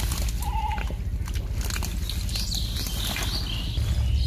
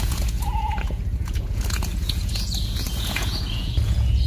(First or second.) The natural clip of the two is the first